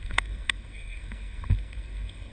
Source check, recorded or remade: remade